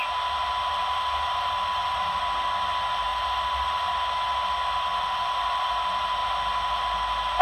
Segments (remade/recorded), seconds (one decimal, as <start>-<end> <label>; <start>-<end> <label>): 0.0-0.8 recorded; 0.8-2.2 remade; 2.2-3.1 recorded; 3.1-3.9 remade; 3.9-4.9 recorded; 4.9-5.7 remade; 5.7-7.4 recorded